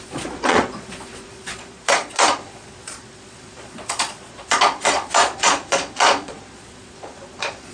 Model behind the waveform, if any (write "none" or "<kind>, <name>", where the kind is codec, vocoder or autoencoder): vocoder, Vocos